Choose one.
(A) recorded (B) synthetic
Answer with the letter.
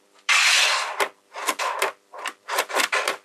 B